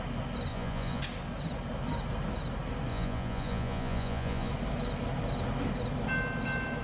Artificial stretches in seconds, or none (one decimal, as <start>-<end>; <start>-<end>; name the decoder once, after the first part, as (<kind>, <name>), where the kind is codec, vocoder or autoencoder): 0.5-1.0 (vocoder, Vocos); 2.9-4.5